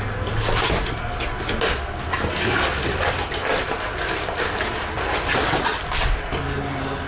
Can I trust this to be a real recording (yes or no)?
yes